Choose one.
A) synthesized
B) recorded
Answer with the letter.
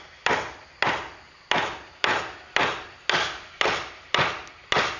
B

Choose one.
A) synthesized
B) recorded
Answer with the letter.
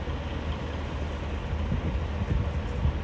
B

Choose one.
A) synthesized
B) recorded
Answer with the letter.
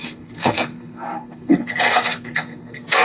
A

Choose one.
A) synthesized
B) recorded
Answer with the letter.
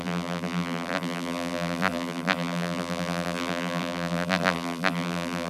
A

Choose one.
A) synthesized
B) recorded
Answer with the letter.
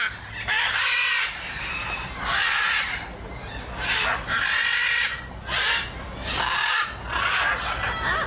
B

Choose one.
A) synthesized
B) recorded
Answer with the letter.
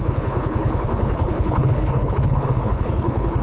A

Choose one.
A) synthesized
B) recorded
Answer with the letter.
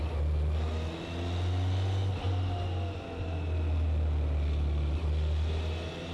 B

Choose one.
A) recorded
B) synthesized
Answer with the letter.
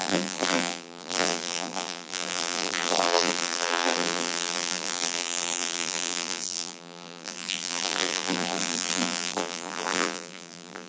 B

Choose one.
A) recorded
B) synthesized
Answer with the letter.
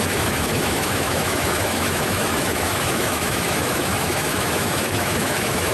B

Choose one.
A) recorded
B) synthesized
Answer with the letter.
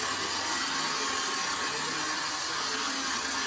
A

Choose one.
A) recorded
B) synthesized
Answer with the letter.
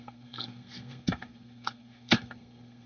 B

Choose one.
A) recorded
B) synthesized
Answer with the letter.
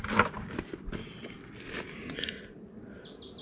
A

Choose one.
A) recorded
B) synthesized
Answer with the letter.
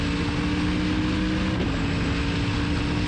A